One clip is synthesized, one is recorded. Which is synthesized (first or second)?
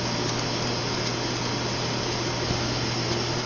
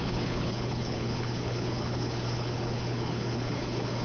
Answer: second